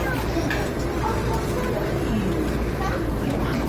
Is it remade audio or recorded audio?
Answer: remade